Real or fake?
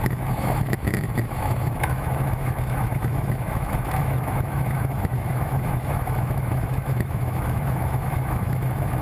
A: fake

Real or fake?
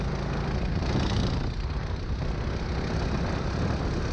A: real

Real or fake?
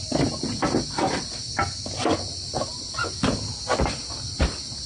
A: real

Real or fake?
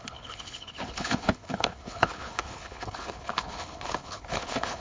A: fake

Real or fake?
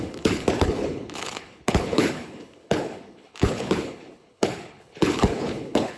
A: fake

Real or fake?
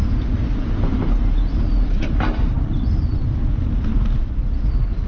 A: real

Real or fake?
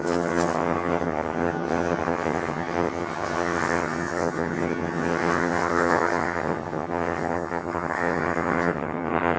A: fake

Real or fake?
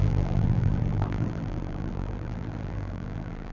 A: fake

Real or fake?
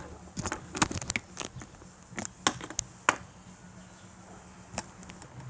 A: real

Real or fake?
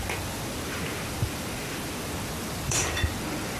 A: fake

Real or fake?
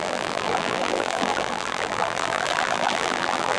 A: fake